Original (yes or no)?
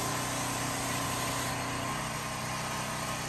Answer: yes